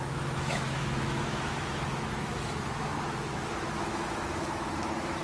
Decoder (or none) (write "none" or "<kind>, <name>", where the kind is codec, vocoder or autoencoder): autoencoder, DAC-VAE